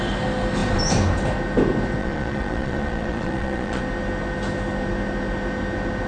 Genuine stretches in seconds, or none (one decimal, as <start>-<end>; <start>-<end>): 0.0-2.0; 3.8-6.1